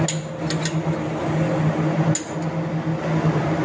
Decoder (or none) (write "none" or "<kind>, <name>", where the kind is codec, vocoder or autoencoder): none